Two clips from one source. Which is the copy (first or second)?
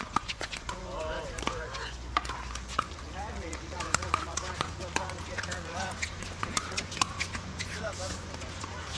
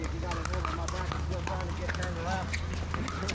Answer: first